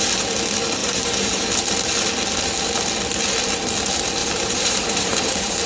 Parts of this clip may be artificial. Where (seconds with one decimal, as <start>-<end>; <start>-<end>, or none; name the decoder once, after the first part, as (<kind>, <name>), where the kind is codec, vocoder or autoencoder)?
0.8-1.6 (vocoder, BigVGAN v2); 4.2-5.7